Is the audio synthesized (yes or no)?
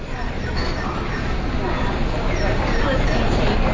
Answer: no